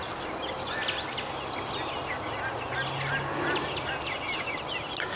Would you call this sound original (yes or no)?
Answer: yes